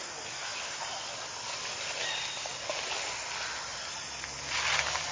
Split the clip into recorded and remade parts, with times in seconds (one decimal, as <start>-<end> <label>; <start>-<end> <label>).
0.0-5.1 recorded